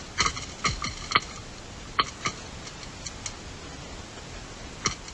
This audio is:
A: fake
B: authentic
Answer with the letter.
B